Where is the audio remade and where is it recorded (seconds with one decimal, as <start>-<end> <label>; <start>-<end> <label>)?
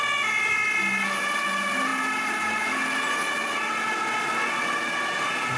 0.0-5.6 recorded